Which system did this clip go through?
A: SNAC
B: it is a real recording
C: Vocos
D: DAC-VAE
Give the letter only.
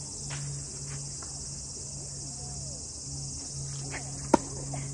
B